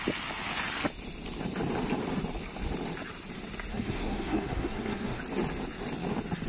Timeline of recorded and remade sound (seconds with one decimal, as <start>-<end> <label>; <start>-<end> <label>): 0.0-3.7 recorded; 3.7-5.2 remade; 5.2-6.5 recorded